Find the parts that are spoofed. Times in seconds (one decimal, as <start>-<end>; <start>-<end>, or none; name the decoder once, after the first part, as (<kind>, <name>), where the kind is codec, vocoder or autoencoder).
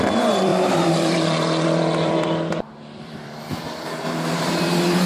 0.0-5.1 (vocoder, BigVGAN v2)